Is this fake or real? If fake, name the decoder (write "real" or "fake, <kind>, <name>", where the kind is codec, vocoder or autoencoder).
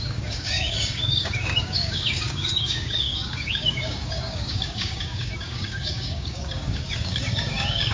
fake, codec, DAC